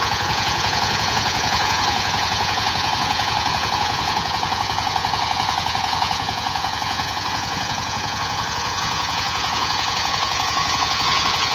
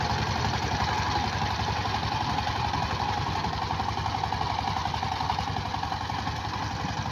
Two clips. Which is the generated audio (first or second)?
first